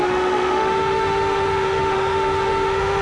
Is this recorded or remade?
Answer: remade